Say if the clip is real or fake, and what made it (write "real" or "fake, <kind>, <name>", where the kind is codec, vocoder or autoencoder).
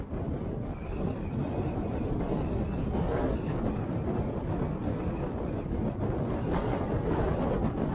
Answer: real